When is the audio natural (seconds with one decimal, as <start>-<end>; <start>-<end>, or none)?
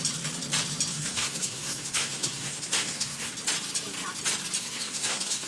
0.0-0.9; 3.3-4.6